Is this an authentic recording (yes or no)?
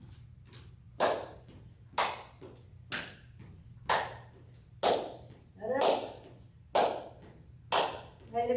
yes